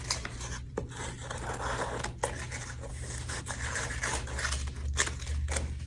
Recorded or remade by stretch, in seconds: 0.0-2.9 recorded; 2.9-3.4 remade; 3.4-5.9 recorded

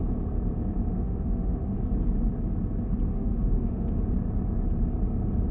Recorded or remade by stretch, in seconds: 0.0-0.9 recorded; 0.9-1.8 remade; 1.8-3.1 recorded; 3.1-4.1 remade; 4.1-5.5 recorded